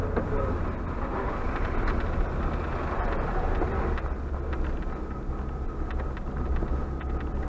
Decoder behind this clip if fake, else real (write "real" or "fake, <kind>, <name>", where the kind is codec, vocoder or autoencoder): real